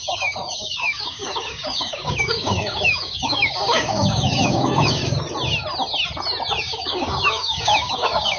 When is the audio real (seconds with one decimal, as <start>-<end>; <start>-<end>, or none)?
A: 5.0-6.6